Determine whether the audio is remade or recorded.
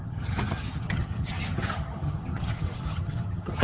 remade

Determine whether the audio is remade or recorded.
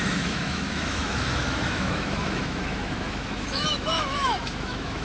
remade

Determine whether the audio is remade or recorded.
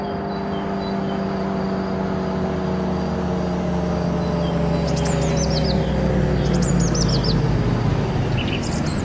recorded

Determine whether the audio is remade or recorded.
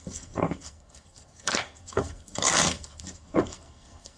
remade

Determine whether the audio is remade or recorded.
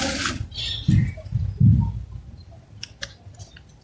recorded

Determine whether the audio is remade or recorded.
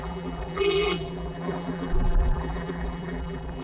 remade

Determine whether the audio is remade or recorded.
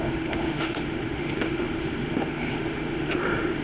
remade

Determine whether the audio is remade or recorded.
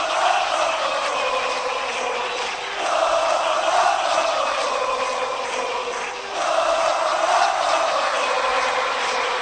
recorded